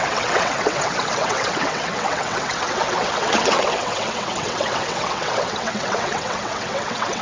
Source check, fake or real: fake